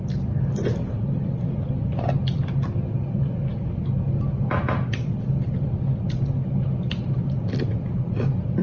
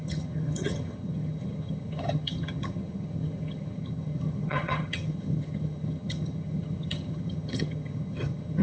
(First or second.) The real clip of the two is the first